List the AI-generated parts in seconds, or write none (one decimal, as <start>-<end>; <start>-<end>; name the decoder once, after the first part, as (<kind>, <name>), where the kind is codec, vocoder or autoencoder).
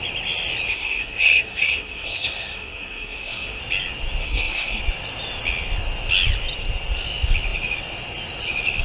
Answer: 0.7-3.6 (codec, SNAC); 4.2-4.8